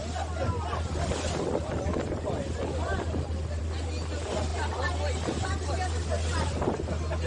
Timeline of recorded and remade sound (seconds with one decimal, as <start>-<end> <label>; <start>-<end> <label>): 0.0-7.3 recorded